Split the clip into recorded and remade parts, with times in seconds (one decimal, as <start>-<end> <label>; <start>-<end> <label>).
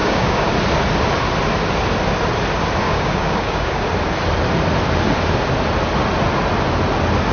0.0-0.5 remade; 0.5-2.8 recorded; 2.8-3.9 remade; 3.9-7.3 recorded